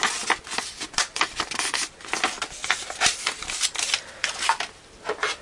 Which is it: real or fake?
real